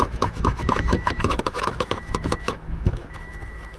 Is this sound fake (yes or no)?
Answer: yes